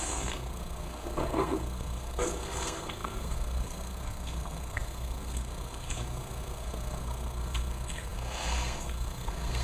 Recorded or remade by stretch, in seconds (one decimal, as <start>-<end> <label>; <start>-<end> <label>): 0.0-9.6 remade